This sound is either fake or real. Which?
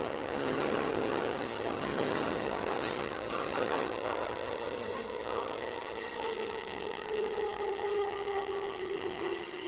fake